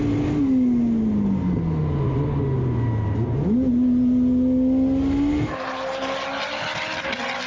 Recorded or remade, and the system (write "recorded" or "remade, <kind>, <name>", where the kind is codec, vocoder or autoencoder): recorded